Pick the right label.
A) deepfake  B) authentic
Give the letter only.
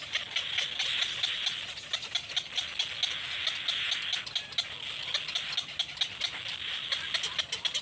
B